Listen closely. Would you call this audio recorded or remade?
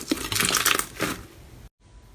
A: recorded